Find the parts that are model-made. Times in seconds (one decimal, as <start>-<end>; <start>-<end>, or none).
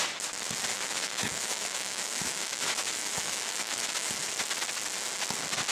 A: 0.7-4.1